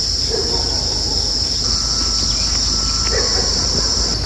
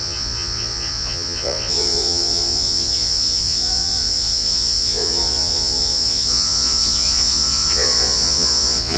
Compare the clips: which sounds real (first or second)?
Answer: first